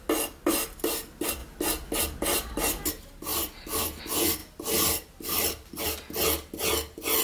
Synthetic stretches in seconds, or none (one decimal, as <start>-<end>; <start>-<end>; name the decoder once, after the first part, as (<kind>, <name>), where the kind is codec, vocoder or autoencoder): none